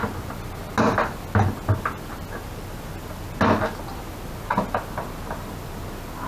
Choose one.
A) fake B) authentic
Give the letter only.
B